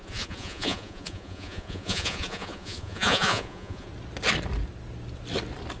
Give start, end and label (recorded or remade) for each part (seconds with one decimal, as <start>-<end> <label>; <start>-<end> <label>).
0.0-3.9 remade; 3.9-5.8 recorded